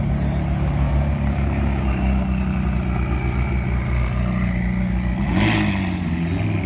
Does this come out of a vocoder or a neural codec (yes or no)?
no